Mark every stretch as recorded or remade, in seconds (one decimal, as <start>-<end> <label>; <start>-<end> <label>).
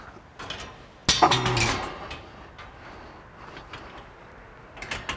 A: 0.0-5.2 recorded